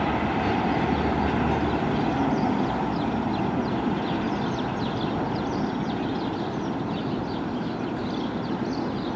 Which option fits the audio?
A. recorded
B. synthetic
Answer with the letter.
A